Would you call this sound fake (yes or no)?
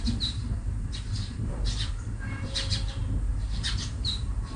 yes